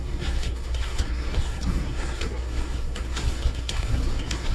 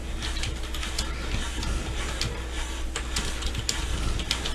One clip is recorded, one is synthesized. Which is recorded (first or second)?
second